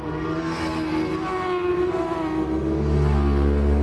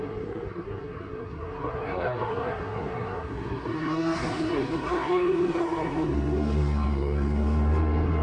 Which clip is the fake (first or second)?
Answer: second